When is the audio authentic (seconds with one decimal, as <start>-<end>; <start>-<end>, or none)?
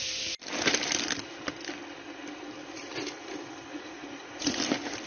0.0-3.7; 4.6-5.1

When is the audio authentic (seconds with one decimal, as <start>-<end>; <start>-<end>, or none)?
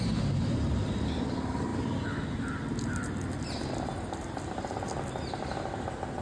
0.0-6.2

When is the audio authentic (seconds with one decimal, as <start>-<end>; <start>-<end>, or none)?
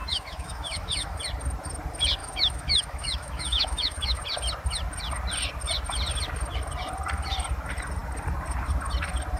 1.2-2.2; 4.2-9.4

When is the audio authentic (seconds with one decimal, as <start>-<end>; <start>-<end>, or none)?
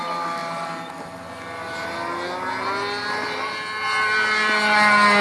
0.0-5.2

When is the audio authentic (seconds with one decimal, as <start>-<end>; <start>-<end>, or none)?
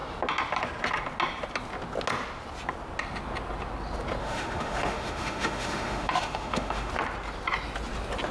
0.0-4.2; 6.9-8.3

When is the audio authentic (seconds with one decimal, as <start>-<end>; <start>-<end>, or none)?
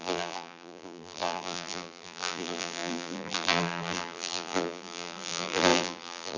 none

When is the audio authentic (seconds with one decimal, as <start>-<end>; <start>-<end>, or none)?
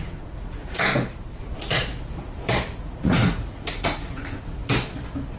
0.9-1.4; 1.8-2.8; 4.6-5.4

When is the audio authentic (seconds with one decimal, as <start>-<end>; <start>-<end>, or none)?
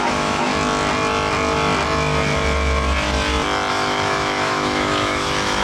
0.5-3.7